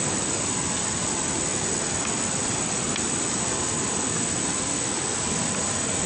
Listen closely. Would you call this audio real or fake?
real